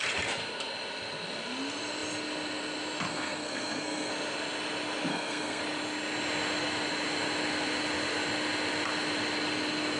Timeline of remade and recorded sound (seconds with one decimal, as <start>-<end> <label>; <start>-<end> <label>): 0.0-3.1 recorded; 3.1-4.1 remade; 4.1-5.1 recorded; 5.1-5.6 remade; 5.6-10.0 recorded